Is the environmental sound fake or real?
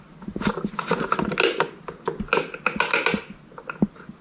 real